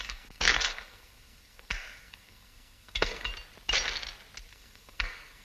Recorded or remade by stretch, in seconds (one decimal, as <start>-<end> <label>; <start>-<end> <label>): 0.0-3.3 remade; 3.3-4.5 recorded; 4.5-5.4 remade